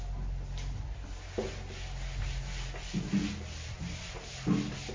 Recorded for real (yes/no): yes